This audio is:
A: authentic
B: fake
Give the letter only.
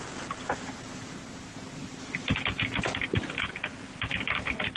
A